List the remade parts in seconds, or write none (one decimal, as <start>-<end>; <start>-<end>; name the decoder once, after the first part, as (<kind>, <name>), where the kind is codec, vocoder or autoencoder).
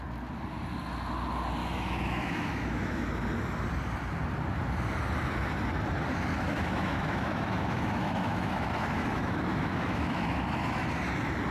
1.6-3.2 (autoencoder, DAC-VAE); 6.3-10.9